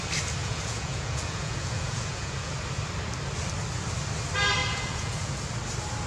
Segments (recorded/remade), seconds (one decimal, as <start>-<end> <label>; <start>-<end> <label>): 0.0-0.4 recorded; 0.4-2.5 remade; 2.5-4.6 recorded; 4.6-5.4 remade; 5.4-6.1 recorded